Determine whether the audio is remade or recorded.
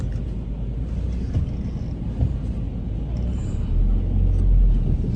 recorded